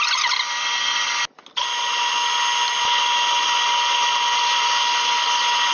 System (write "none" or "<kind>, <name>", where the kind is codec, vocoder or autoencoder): none